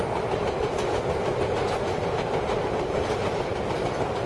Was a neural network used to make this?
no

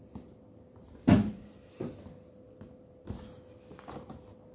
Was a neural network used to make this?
no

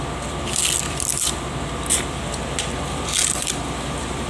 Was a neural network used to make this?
no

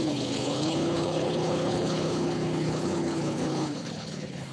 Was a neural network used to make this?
yes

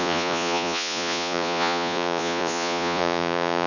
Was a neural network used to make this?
yes